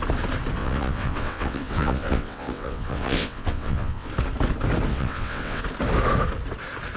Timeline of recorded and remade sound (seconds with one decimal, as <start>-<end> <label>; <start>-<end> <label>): 0.0-0.6 recorded; 0.6-4.1 remade; 4.1-4.9 recorded; 4.9-5.6 remade; 5.6-7.0 recorded